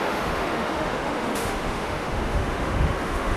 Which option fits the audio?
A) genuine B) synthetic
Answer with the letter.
B